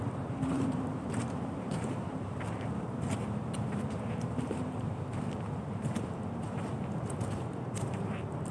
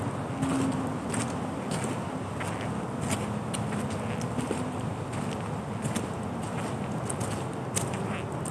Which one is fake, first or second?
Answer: first